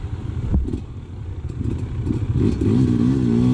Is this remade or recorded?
recorded